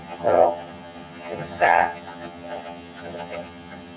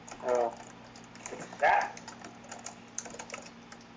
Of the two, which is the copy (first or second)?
first